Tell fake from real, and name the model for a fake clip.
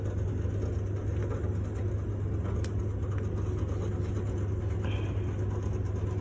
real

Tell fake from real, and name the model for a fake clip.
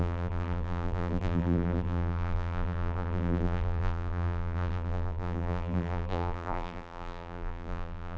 fake, vocoder, BigVGAN v2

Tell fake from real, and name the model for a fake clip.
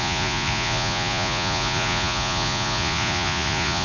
fake, vocoder, Vocos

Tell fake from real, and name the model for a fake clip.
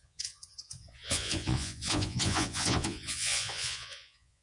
fake, vocoder, Vocos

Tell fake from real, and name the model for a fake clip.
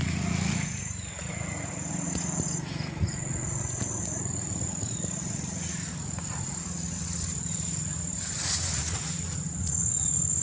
fake, vocoder, Vocos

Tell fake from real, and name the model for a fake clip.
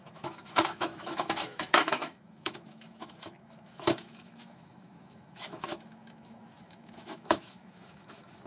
fake, autoencoder, DAC-VAE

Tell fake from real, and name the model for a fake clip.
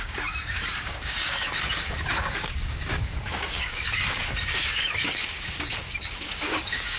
fake, codec, DAC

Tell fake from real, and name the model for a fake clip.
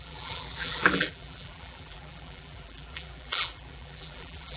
fake, vocoder, BigVGAN v2